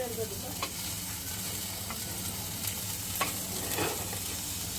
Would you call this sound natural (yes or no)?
yes